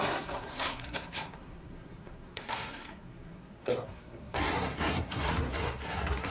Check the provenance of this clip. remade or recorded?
remade